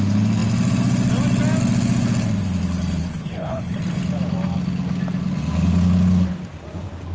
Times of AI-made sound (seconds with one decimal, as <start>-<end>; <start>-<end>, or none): 3.0-3.8